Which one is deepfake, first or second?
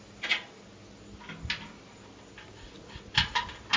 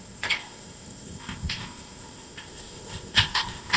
second